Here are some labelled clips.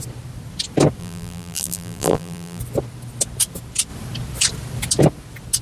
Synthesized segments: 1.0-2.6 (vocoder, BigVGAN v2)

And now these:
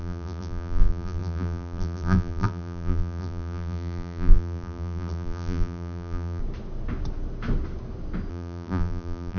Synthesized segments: 0.0-6.4 (vocoder, BigVGAN v2); 8.3-9.4

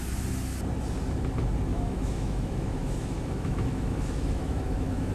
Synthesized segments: 1.7-5.1 (autoencoder, DAC-VAE)

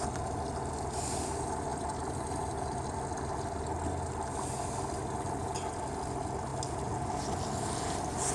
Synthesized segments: none

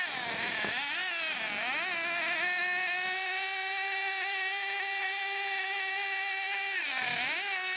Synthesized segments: none